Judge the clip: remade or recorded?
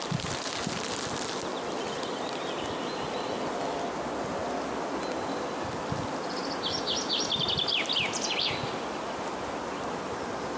recorded